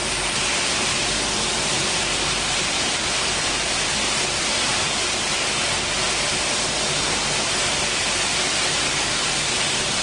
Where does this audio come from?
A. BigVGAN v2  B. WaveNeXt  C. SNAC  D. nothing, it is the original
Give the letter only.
A